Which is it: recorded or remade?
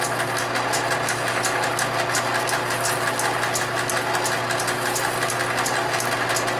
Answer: recorded